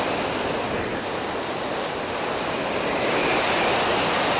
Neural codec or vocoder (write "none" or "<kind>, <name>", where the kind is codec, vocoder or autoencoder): none